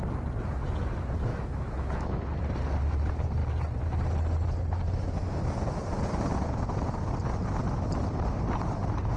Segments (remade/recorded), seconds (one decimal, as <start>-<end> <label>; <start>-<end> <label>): 0.0-1.3 recorded; 1.3-2.2 remade; 2.2-9.2 recorded